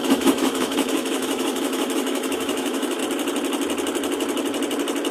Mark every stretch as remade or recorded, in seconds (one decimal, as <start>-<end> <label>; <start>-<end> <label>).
0.0-3.0 remade; 3.0-5.1 recorded